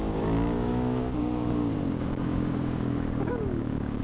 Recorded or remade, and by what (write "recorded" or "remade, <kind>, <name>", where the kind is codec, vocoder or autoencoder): remade, codec, DAC